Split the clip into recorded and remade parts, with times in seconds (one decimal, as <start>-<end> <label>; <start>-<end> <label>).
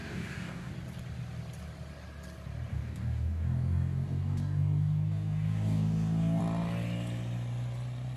0.0-0.7 remade; 0.7-2.7 recorded; 2.7-6.4 remade; 6.4-8.2 recorded